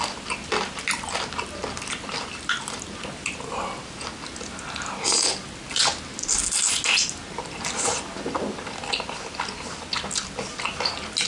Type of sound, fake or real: real